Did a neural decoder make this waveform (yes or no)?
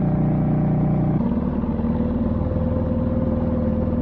no